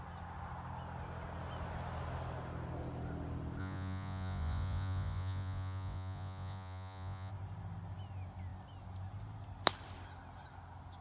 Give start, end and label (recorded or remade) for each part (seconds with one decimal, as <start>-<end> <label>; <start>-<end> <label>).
0.0-3.6 recorded; 3.6-7.3 remade; 7.3-11.0 recorded

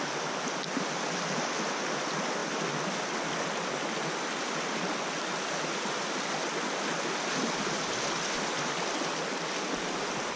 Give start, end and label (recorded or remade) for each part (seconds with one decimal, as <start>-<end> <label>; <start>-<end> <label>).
0.0-10.4 recorded